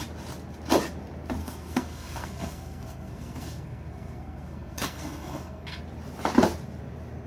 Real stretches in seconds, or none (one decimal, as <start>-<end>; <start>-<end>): 0.0-1.4; 5.8-7.3